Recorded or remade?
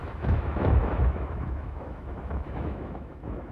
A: remade